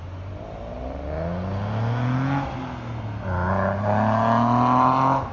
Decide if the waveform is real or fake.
real